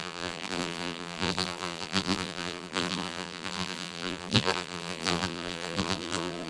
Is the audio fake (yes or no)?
yes